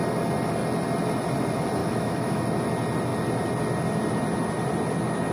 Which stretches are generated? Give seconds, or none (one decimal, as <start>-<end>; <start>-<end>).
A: 1.8-2.4